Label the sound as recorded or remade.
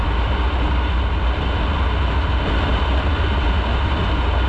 recorded